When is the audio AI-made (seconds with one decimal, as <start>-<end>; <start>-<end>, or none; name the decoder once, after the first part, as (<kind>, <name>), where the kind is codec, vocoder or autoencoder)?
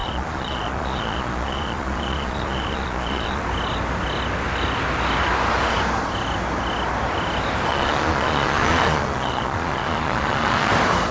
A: 0.0-3.4 (vocoder, Vocos); 7.7-10.7